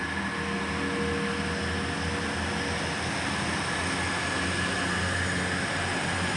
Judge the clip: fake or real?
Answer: real